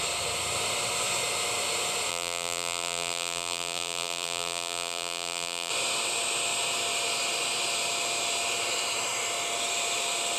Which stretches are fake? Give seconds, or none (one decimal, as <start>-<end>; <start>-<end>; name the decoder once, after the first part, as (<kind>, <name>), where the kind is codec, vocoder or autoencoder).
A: 2.1-5.7 (vocoder, BigVGAN v2)